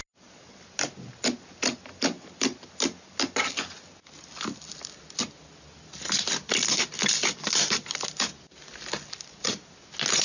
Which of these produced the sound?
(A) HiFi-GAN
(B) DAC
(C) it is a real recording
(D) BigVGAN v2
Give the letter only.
C